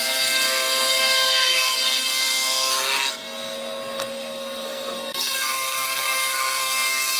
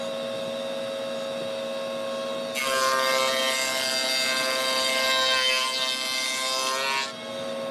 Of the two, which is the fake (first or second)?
first